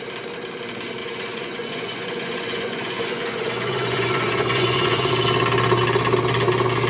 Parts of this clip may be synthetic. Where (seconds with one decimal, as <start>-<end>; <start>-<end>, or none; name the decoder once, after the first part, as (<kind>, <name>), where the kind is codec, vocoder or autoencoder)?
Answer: 1.0-5.1 (vocoder, Vocos)